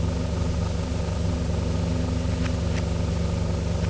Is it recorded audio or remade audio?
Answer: recorded